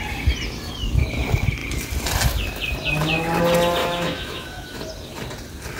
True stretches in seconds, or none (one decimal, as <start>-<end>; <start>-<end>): 0.0-3.8; 4.8-5.8